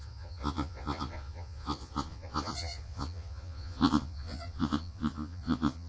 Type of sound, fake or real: fake